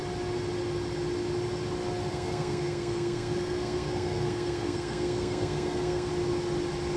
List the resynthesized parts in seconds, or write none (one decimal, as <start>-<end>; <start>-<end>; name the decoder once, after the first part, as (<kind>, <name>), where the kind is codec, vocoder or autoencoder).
2.1-6.1 (codec, SNAC)